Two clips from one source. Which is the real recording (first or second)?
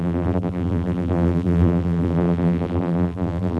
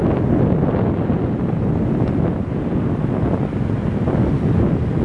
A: second